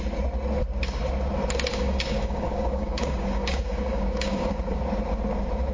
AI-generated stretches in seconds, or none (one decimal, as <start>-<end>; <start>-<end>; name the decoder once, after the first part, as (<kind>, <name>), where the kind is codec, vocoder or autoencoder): 1.7-4.8 (codec, DAC)